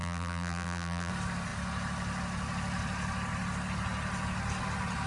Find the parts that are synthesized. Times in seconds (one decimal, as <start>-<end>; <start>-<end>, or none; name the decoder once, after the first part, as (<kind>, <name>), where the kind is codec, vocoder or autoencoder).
0.0-1.1 (vocoder, BigVGAN v2)